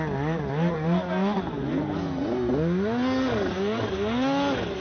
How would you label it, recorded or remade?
recorded